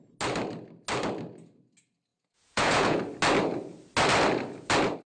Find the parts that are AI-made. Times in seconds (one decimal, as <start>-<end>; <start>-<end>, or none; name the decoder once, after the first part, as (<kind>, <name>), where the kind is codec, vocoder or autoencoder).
2.1-3.0 (vocoder, Vocos)